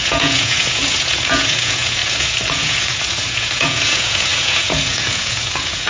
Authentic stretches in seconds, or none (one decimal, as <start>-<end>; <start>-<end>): none